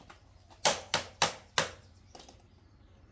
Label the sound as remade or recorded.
recorded